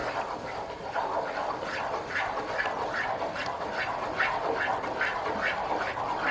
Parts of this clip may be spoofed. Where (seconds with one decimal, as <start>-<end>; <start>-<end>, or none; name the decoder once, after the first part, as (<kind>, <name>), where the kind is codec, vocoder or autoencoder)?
none